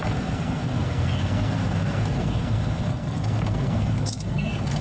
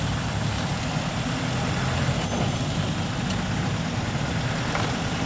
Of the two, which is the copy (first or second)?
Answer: first